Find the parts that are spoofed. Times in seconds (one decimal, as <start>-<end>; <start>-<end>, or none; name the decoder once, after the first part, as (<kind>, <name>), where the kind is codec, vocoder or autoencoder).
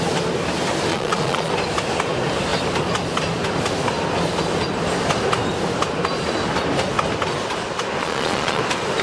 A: 0.9-1.5 (vocoder, Vocos); 8.0-8.6